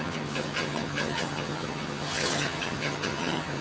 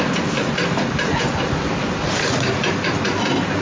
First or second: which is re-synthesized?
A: first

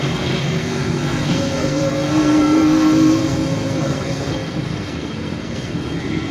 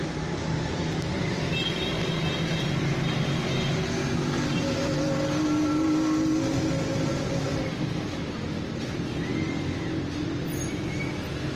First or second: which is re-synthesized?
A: first